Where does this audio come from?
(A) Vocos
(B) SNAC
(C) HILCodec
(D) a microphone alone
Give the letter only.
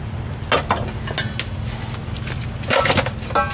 D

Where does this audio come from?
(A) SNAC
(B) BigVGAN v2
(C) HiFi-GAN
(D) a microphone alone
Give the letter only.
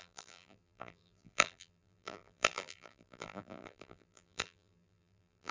B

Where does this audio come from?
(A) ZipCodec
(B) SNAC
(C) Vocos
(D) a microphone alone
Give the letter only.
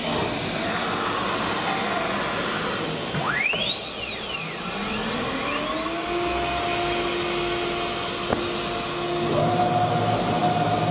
D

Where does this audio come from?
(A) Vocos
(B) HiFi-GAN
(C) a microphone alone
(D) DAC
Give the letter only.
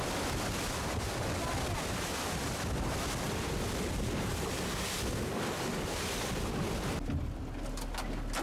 C